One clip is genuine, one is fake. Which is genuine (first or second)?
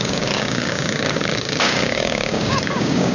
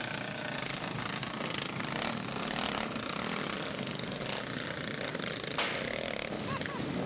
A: second